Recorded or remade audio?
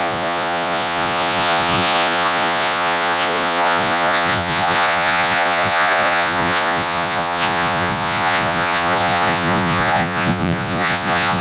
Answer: remade